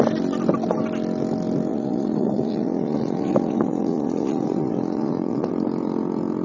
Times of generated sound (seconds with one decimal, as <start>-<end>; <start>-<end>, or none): 1.7-5.5